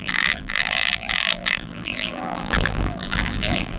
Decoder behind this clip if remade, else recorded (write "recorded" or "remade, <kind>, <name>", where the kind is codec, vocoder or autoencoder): remade, vocoder, BigVGAN v2